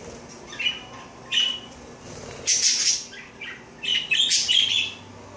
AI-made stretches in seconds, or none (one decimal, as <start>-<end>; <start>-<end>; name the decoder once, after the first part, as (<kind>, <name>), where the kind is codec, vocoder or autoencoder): none

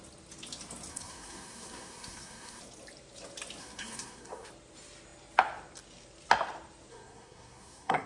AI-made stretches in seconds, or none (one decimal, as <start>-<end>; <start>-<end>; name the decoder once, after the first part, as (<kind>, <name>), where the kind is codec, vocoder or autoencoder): 0.9-2.6 (codec, SNAC); 3.6-4.5; 6.9-8.1

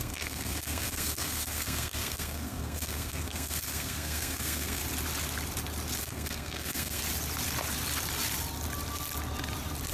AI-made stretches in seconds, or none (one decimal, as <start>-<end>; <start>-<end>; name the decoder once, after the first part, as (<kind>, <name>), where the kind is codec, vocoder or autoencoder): 0.0-4.8 (codec, SNAC); 6.0-7.0

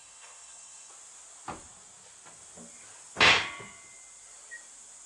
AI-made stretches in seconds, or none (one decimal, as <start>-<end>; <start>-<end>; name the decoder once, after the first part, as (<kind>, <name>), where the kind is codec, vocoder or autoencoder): 0.0-0.9 (codec, SNAC)

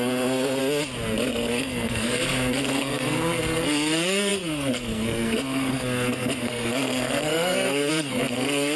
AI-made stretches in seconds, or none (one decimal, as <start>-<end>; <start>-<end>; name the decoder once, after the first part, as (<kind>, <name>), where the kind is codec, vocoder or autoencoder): 0.0-0.6 (codec, SNAC); 1.3-8.8

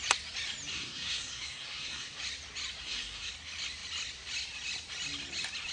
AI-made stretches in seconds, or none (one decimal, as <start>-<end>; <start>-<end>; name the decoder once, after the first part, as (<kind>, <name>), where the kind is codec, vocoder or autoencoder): 0.7-2.2 (codec, SNAC); 2.8-3.3

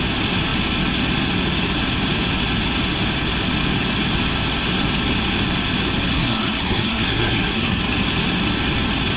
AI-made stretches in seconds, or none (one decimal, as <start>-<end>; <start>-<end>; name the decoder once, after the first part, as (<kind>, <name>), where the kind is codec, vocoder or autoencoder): 6.1-7.8 (codec, SNAC)

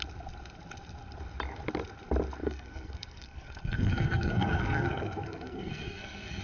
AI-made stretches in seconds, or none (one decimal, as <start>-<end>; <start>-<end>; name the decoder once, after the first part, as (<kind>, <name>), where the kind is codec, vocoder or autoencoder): 2.4-6.4 (codec, SNAC)